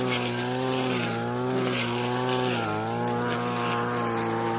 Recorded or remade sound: recorded